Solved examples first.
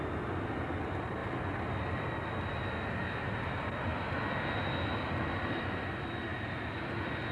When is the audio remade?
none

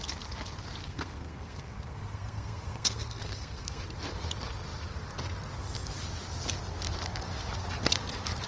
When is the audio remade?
0.8-3.8 (codec, SNAC)

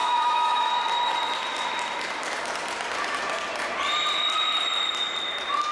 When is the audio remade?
0.0-0.7 (autoencoder, DAC-VAE)

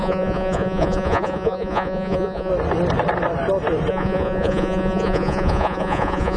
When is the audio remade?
0.0-2.5 (vocoder, Vocos); 3.9-6.4